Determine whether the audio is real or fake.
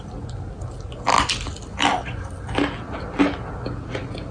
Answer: real